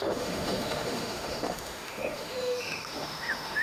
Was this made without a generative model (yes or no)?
no